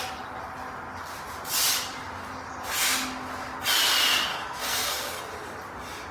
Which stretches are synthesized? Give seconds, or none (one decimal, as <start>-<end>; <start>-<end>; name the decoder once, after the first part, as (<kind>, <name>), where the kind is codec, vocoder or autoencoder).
4.3-5.2 (codec, SNAC)